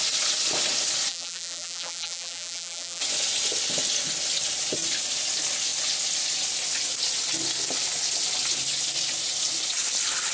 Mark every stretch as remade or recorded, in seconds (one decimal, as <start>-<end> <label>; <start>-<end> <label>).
0.0-1.1 recorded; 1.1-3.0 remade; 3.0-10.3 recorded